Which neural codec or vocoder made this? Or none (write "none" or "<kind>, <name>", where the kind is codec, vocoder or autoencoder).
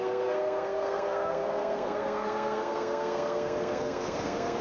codec, SNAC